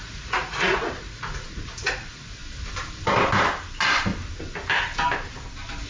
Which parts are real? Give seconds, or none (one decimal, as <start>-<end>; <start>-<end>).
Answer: 2.4-5.9